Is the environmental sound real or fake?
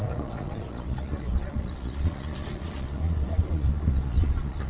fake